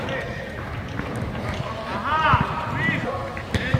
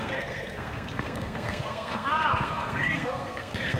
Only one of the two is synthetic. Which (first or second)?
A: second